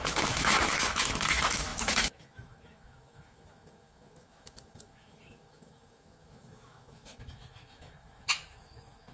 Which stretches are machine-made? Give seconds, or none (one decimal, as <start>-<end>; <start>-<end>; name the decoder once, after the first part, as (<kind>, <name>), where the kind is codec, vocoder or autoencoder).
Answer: 0.0-9.1 (autoencoder, DAC-VAE)